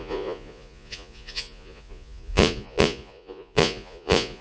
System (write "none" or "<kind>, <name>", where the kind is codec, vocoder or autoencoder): vocoder, Vocos